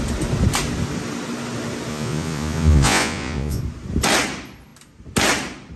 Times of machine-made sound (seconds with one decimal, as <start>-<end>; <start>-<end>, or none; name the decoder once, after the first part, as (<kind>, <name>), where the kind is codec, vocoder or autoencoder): 1.9-3.6 (vocoder, Vocos)

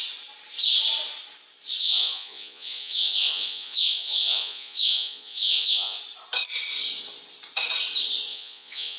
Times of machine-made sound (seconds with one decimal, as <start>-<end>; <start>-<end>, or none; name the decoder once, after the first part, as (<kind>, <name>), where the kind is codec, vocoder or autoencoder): 1.8-6.0 (vocoder, Vocos); 8.3-9.0

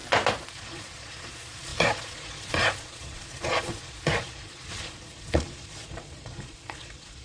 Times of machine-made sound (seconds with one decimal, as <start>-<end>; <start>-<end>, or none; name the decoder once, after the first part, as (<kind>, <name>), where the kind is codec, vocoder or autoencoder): 0.5-7.2 (vocoder, Vocos)

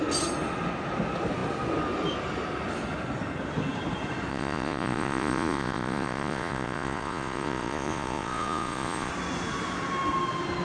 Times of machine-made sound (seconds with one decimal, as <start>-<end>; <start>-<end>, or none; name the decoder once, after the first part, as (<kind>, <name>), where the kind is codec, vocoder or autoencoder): 4.3-9.1 (vocoder, Vocos)

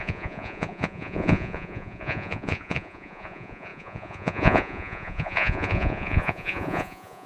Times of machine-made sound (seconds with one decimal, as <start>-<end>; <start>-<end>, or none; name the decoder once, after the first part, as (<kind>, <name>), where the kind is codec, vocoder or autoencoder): 0.0-7.3 (vocoder, Vocos)

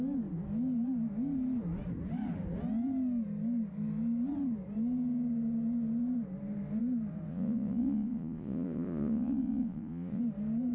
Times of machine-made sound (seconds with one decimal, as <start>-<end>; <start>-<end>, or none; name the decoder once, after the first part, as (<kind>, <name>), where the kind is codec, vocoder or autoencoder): 7.3-10.2 (vocoder, Vocos)

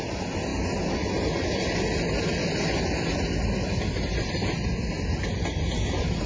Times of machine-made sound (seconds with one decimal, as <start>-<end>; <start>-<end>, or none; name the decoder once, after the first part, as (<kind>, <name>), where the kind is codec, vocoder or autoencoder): none